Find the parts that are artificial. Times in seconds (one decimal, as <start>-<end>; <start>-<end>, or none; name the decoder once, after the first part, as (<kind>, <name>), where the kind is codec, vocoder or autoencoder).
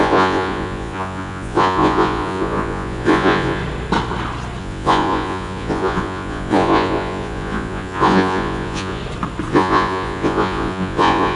0.0-3.6 (vocoder, Vocos); 4.6-9.0; 9.5-11.4